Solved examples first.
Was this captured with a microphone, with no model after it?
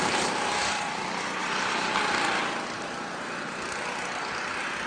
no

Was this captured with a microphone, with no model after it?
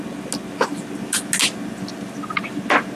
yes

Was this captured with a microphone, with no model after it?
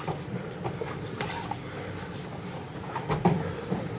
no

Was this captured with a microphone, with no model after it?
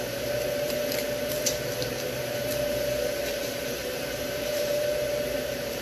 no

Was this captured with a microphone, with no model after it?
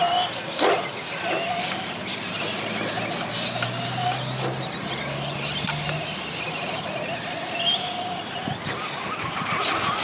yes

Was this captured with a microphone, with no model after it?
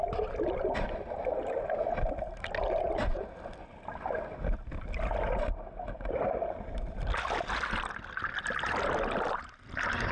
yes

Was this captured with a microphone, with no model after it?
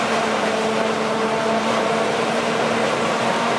no